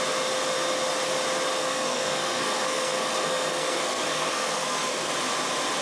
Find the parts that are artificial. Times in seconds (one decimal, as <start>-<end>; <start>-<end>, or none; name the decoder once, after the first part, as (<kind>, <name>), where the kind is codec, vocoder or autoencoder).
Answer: 1.6-5.1 (codec, SNAC)